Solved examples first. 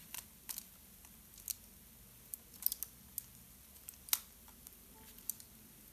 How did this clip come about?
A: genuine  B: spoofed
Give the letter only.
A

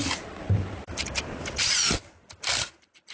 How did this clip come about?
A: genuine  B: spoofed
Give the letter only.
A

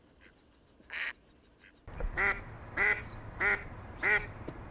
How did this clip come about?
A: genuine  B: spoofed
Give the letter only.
A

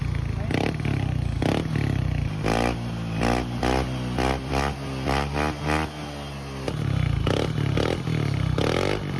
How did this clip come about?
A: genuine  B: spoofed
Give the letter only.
A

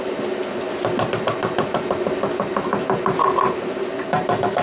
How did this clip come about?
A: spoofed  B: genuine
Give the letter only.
B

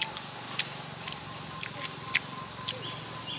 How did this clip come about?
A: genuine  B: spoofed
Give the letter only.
A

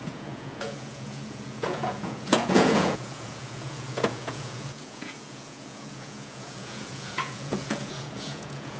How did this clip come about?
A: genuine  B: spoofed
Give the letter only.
B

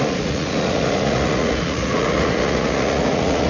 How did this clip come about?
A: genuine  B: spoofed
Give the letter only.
B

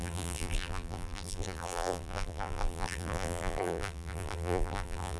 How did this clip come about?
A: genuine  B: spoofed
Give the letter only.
B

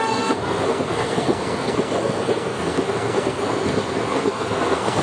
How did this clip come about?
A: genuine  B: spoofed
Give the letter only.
B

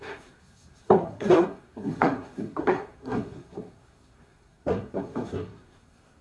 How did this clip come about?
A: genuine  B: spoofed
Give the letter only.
B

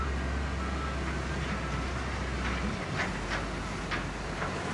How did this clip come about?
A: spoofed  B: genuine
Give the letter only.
B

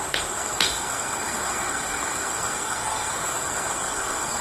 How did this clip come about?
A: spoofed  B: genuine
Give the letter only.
A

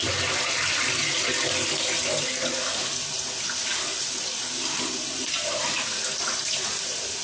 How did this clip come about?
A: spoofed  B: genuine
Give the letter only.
B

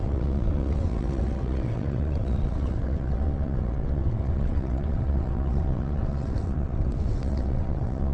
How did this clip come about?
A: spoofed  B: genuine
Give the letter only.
A